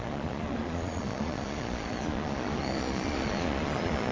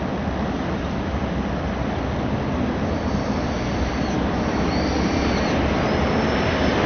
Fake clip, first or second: first